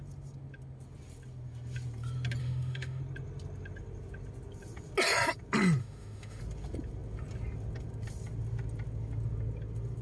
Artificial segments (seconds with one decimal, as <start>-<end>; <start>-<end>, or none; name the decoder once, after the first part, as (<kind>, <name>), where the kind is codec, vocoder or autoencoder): 2.4-3.0 (autoencoder, DAC-VAE); 5.8-6.4

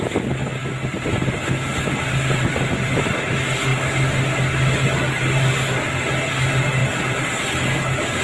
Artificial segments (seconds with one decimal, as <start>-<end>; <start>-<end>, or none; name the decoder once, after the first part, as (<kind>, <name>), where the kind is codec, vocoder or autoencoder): none

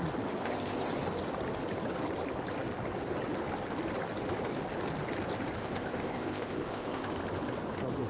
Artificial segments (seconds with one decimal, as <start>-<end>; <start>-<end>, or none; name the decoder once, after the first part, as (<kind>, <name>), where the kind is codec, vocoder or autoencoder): 0.4-0.9 (codec, ZipCodec); 5.6-7.1